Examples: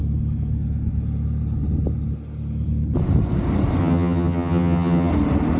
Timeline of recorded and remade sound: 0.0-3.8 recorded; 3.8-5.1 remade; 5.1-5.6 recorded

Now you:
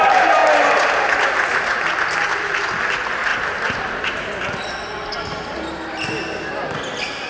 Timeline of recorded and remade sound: 0.0-7.3 recorded

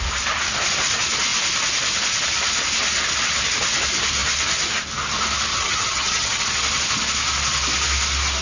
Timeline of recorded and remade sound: 0.0-5.5 recorded; 5.5-6.4 remade; 6.4-8.4 recorded

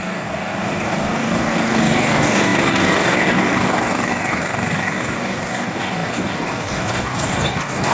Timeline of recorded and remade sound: 0.0-7.9 remade

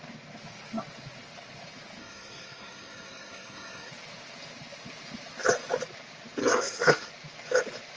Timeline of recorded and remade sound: 0.0-2.0 recorded; 2.0-3.9 remade; 3.9-6.4 recorded; 6.4-7.1 remade; 7.1-8.0 recorded

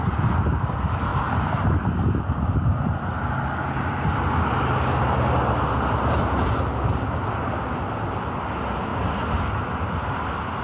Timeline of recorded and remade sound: 0.0-10.6 recorded